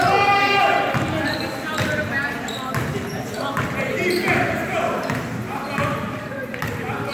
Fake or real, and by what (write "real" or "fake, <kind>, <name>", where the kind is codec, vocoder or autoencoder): real